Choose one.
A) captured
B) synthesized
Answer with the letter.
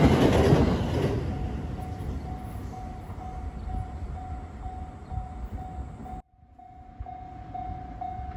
A